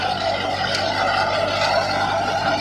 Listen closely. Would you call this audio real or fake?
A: real